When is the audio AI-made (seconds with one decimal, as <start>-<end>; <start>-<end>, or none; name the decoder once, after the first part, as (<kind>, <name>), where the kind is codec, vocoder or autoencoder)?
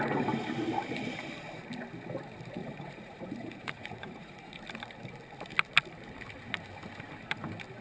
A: 2.6-4.6 (vocoder, Vocos)